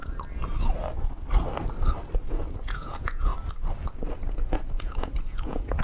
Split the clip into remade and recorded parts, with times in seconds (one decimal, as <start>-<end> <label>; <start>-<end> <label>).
0.0-2.3 recorded; 2.3-3.3 remade; 3.3-4.2 recorded; 4.2-5.8 remade